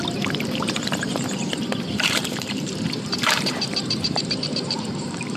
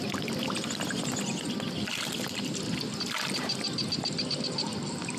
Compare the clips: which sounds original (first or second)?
second